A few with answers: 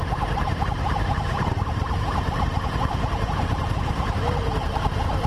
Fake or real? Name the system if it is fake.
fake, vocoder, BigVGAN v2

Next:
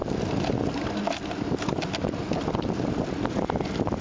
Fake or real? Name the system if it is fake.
real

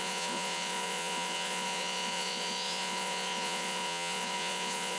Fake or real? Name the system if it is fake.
fake, vocoder, Vocos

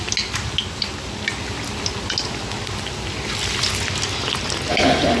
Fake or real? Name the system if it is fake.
real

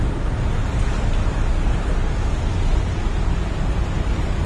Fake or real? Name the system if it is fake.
real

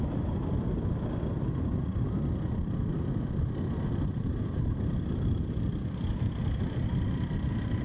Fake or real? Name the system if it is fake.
real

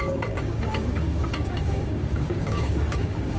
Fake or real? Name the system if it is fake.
fake, codec, DAC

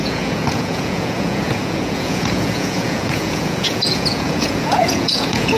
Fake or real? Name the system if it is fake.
fake, vocoder, Vocos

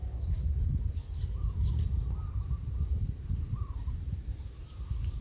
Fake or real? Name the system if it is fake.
real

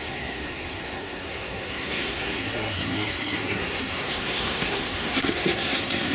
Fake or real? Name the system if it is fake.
fake, codec, SNAC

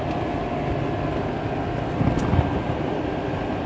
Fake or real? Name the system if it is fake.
real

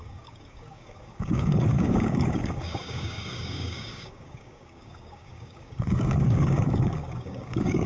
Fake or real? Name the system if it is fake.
fake, codec, DAC